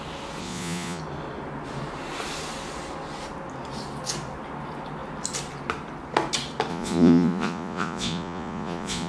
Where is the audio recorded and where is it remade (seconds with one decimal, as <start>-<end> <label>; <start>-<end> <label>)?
0.0-0.4 recorded; 0.4-1.0 remade; 1.0-6.7 recorded; 6.7-9.1 remade